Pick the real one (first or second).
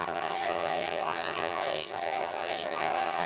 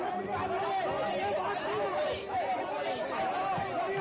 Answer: second